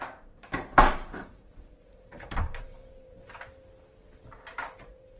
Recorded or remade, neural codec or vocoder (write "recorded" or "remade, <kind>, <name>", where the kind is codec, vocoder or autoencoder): remade, vocoder, BigVGAN v2